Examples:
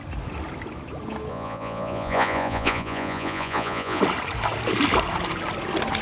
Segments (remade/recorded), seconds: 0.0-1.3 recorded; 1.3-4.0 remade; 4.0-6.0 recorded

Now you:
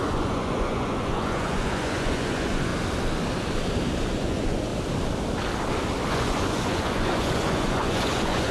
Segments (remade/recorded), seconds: 0.0-2.7 remade; 2.7-4.1 recorded; 4.1-4.7 remade; 4.7-6.1 recorded; 6.1-8.5 remade

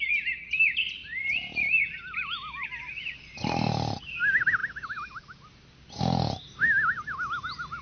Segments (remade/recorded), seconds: 0.0-7.8 recorded

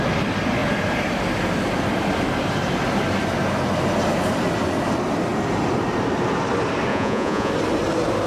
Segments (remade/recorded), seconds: 0.0-6.9 recorded; 6.9-7.5 remade; 7.5-8.3 recorded

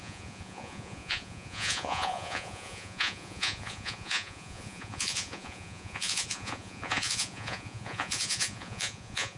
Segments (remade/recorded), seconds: 0.0-9.4 remade

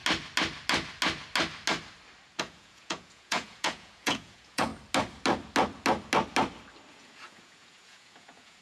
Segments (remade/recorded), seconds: 0.0-2.4 recorded; 2.4-4.7 remade; 4.7-6.9 recorded; 6.9-8.6 remade